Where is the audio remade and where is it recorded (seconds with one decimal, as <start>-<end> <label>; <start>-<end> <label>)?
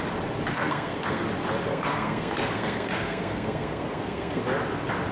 0.0-0.5 recorded; 0.5-1.2 remade; 1.2-1.7 recorded; 1.7-4.4 remade; 4.4-5.1 recorded